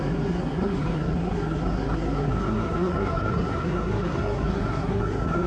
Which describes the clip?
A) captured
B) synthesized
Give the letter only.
B